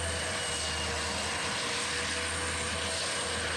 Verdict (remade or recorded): recorded